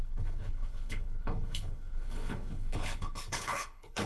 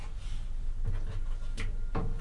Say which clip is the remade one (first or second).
first